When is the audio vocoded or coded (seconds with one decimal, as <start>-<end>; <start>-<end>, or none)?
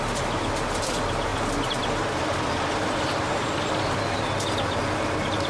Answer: none